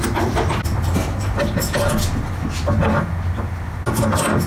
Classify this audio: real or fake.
real